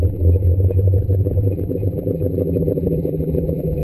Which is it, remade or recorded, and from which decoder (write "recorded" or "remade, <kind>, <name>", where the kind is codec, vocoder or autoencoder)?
remade, vocoder, BigVGAN v2